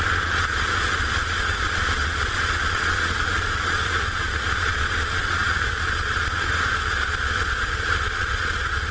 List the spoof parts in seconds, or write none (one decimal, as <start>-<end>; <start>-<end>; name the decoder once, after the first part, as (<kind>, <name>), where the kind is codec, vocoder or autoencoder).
0.0-8.9 (vocoder, Vocos)